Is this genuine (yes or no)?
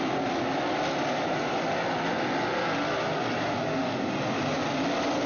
yes